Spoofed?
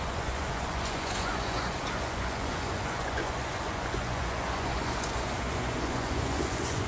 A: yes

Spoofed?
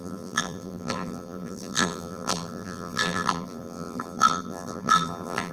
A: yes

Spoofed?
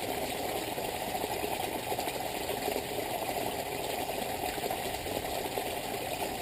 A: no